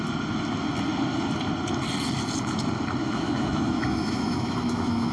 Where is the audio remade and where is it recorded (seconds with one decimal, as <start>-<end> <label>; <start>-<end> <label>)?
0.0-3.0 recorded; 3.0-5.1 remade